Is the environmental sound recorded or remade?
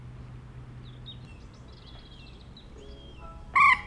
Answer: recorded